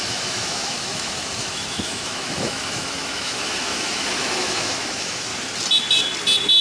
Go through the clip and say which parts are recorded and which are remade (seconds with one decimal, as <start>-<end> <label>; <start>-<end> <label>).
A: 0.0-5.3 remade; 5.3-6.6 recorded